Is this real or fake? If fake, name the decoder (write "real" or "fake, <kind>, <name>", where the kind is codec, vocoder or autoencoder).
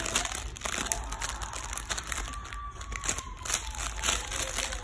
real